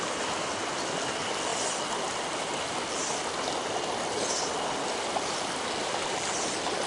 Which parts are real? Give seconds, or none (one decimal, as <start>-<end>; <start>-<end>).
0.0-6.9